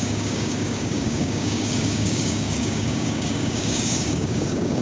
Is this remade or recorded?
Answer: remade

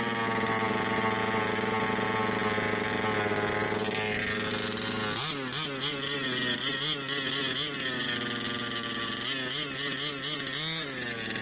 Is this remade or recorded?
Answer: recorded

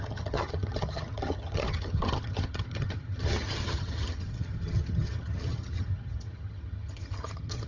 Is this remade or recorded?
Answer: remade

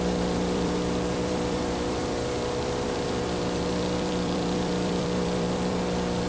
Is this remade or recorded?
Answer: remade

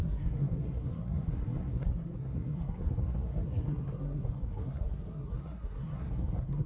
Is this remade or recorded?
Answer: remade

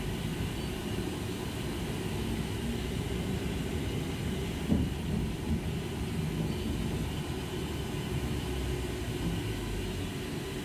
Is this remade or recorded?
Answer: recorded